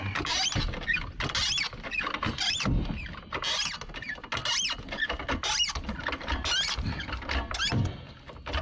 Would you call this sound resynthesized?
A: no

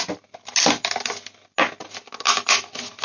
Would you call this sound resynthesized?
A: no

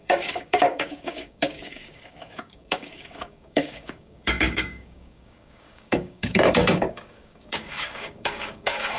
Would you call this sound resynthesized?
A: yes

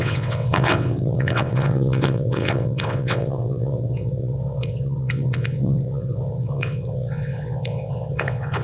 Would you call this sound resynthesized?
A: yes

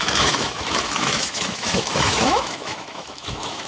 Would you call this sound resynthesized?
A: yes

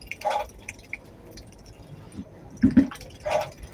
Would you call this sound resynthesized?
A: no